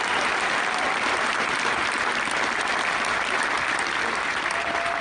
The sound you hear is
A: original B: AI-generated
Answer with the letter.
A